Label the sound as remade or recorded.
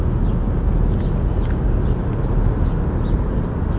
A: recorded